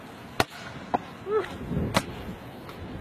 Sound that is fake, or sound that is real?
real